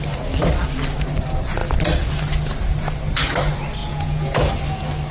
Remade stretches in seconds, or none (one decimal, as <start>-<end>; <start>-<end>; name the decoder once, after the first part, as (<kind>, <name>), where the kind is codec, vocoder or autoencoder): 3.8-4.5 (vocoder, Vocos)